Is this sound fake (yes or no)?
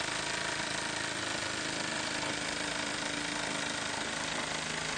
no